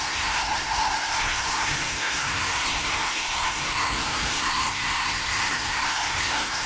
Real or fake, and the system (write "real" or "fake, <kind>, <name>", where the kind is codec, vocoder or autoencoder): fake, codec, SNAC